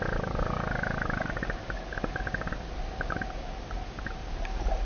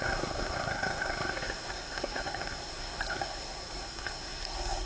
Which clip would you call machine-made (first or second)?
second